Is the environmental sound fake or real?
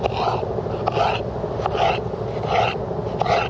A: real